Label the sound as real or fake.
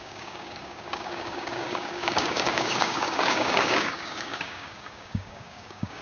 fake